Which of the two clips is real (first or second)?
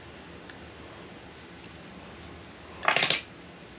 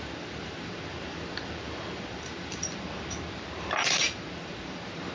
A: first